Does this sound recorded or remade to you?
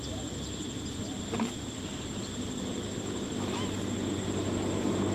recorded